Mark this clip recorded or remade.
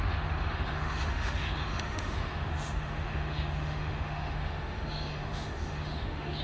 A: remade